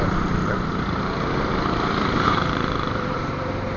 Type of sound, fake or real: fake